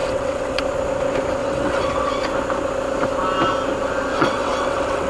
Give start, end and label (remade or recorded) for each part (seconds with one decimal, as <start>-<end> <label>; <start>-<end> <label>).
0.0-0.6 remade; 0.6-1.4 recorded; 1.4-2.1 remade; 2.1-4.1 recorded; 4.1-5.1 remade